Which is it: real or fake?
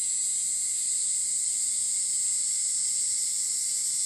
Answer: real